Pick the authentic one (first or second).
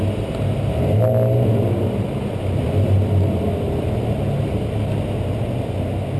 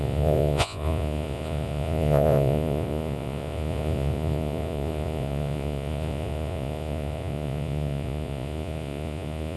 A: first